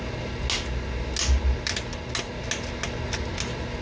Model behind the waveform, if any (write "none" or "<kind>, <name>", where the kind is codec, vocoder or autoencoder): none